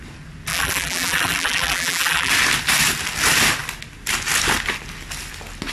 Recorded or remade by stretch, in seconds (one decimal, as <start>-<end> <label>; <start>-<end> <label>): 0.0-0.5 recorded; 0.5-2.3 remade; 2.3-5.7 recorded